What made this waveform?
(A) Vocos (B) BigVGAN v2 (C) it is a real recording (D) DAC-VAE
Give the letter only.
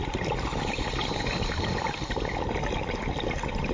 C